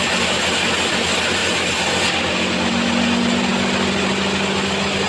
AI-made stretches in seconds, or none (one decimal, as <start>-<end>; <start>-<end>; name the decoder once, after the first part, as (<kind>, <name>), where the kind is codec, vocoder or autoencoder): 1.4-2.0 (vocoder, BigVGAN v2)